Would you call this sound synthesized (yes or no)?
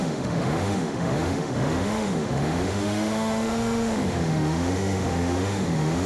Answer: yes